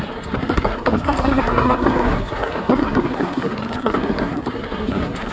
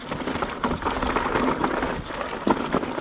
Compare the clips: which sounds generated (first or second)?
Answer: first